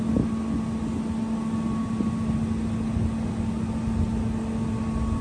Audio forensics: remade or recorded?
recorded